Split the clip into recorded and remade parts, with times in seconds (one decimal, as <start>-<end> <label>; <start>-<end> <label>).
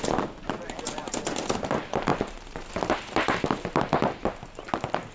0.0-5.1 recorded